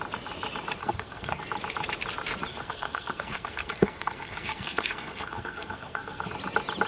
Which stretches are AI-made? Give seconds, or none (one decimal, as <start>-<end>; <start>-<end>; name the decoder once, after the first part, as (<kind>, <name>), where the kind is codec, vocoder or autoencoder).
0.8-1.4 (codec, SNAC); 2.5-6.3